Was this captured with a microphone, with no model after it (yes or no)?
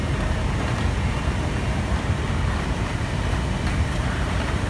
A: no